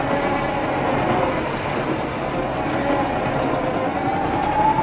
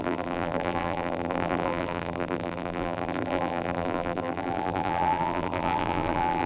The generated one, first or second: second